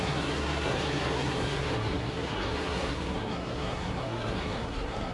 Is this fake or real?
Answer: fake